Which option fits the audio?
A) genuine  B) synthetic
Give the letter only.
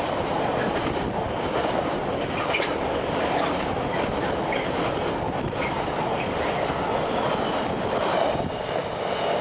A